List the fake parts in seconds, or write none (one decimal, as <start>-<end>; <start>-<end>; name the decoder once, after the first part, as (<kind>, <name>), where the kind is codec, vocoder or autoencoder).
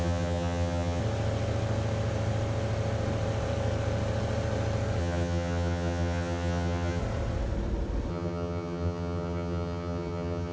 0.0-1.0 (vocoder, HiFi-GAN); 5.0-7.0; 8.1-10.5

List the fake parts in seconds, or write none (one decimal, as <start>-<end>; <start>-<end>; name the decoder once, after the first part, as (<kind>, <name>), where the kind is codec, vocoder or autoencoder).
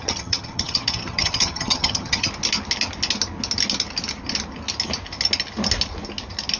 0.0-2.3 (vocoder, HiFi-GAN)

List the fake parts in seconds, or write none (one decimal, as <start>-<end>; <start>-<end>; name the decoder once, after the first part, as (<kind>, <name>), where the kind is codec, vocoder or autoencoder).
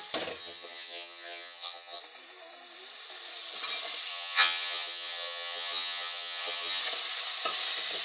0.4-2.0 (vocoder, HiFi-GAN); 4.1-6.8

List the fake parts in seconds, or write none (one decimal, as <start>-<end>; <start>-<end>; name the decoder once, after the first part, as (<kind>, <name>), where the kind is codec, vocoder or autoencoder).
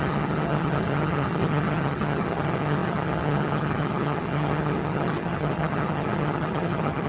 0.0-7.1 (vocoder, HiFi-GAN)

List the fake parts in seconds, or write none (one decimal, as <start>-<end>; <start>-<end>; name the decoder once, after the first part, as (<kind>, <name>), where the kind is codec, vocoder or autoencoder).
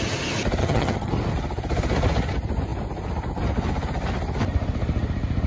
0.6-1.1 (vocoder, HiFi-GAN)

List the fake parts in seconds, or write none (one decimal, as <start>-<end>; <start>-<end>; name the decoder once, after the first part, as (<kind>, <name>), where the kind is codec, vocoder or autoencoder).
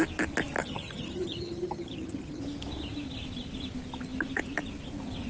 0.6-2.4 (vocoder, HiFi-GAN)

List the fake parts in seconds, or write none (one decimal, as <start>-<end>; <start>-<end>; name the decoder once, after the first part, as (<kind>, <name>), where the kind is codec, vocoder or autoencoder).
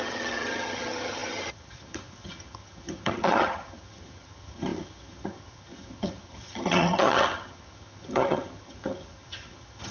0.0-9.9 (vocoder, HiFi-GAN)